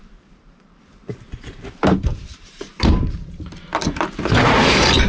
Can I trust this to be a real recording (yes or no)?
no